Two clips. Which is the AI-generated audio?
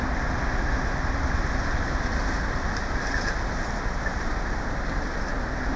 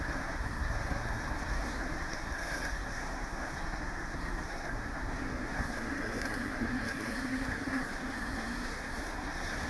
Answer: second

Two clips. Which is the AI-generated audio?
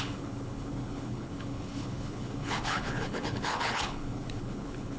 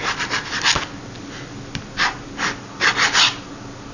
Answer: first